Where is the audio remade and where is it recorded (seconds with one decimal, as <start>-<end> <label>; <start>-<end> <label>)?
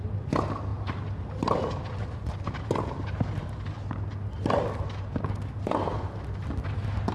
0.0-7.1 recorded